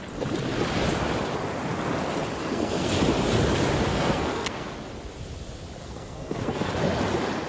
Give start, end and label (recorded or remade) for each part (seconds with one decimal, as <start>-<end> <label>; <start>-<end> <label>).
0.0-2.4 recorded; 2.4-2.9 remade; 2.9-3.9 recorded; 3.9-4.7 remade; 4.7-5.8 recorded; 5.8-6.7 remade; 6.7-7.5 recorded